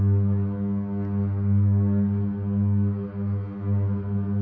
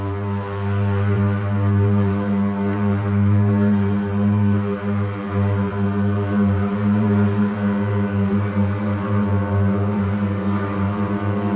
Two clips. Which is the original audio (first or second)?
first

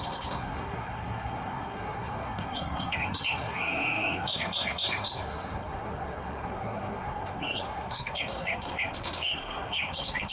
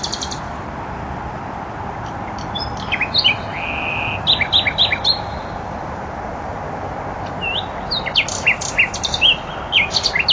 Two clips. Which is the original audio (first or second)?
second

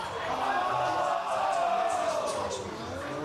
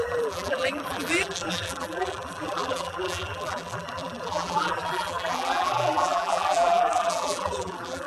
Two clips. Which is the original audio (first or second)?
first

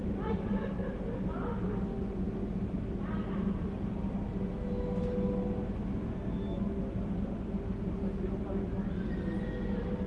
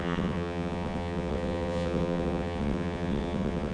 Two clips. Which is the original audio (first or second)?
first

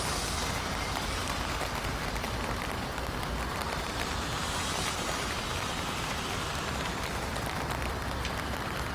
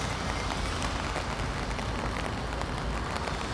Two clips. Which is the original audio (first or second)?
second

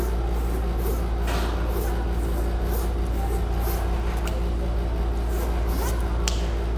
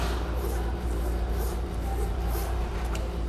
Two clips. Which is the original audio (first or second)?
first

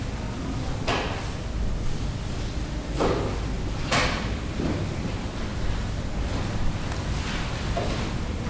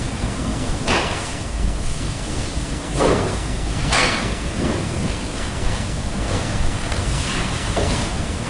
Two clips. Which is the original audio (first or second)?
first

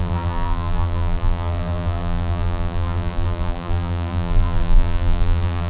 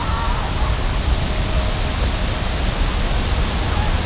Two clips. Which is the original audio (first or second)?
second